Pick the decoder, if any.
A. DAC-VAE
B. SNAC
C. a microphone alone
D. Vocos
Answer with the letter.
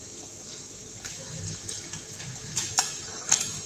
A